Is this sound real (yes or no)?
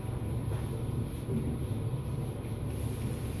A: yes